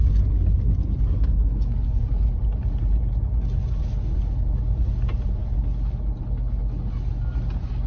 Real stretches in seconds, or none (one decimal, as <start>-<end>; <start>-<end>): 0.0-1.9; 3.4-7.9